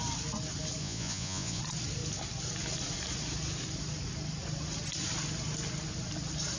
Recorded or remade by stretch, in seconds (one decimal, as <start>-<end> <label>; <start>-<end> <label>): 0.0-0.8 recorded; 0.8-1.6 remade; 1.6-6.6 recorded